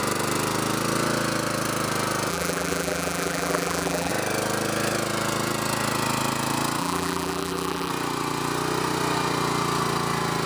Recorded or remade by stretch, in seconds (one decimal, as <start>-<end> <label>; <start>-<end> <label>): 0.0-2.3 recorded; 2.3-4.1 remade; 4.1-6.8 recorded; 6.8-7.9 remade; 7.9-10.5 recorded